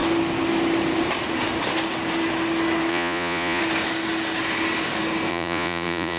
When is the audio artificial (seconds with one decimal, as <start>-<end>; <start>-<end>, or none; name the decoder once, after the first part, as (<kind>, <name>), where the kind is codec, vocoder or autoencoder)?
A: 2.9-3.6 (vocoder, Vocos); 5.3-6.2